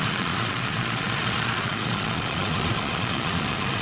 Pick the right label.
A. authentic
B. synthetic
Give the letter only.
B